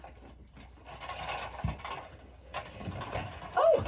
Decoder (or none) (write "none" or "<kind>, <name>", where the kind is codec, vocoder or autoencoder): none